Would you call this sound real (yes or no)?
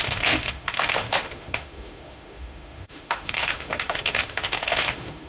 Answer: no